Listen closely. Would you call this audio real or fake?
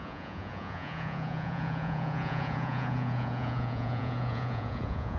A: fake